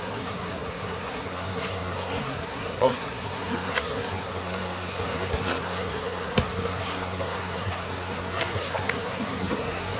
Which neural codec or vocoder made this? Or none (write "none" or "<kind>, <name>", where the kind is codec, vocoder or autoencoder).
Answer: codec, SNAC